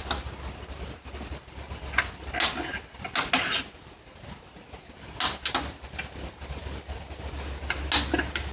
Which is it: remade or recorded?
recorded